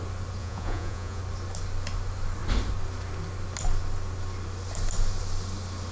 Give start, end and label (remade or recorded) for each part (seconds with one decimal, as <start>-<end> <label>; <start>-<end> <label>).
0.0-0.4 recorded; 0.4-1.2 remade; 1.2-5.9 recorded